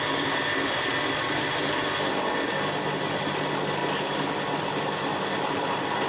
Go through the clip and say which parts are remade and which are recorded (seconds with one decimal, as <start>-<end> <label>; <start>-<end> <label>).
0.0-6.1 recorded